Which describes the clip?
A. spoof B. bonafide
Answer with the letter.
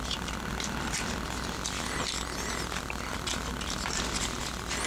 B